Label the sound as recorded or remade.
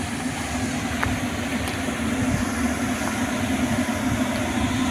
recorded